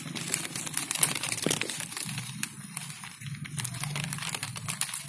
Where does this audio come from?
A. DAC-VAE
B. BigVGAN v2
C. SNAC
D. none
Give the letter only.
D